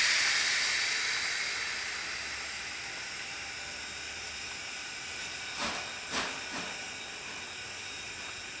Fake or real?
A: real